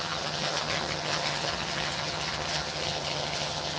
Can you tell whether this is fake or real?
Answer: fake